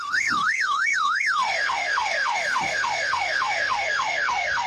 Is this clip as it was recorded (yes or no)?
no